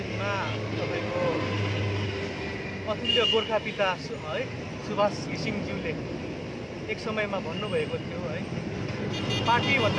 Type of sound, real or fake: real